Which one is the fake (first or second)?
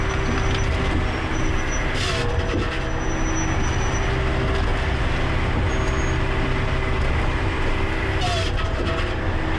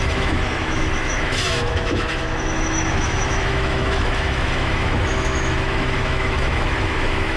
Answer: second